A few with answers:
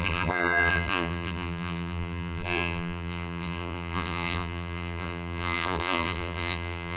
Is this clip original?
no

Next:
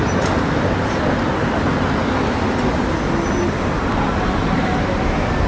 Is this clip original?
yes